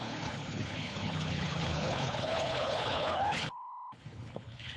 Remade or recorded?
remade